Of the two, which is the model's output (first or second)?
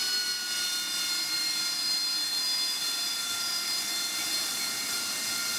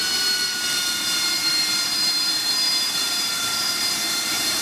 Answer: second